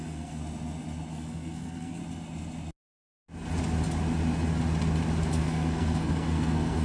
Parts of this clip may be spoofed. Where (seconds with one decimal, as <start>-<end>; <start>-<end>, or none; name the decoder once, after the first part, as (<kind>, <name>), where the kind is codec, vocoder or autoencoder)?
0.0-0.4 (codec, SNAC); 1.1-2.0; 5.3-6.8